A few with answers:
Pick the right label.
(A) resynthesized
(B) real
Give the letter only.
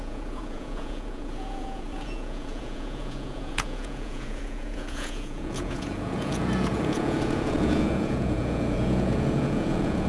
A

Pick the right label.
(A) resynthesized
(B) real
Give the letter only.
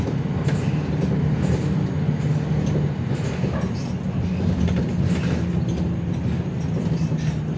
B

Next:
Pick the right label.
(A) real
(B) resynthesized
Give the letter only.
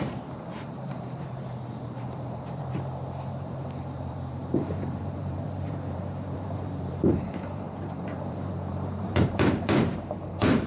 B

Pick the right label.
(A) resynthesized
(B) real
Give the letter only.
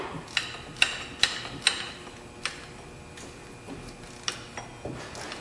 B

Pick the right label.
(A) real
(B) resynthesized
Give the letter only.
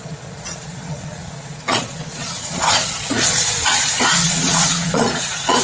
B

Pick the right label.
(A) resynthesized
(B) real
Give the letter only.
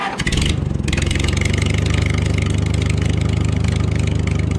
B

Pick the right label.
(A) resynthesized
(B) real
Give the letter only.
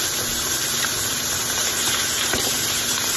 A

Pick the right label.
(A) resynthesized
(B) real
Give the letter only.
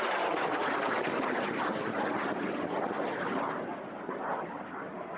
B